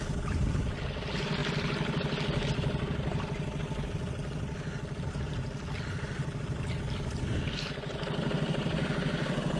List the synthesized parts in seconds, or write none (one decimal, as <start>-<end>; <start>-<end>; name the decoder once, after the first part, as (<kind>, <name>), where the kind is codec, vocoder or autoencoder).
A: none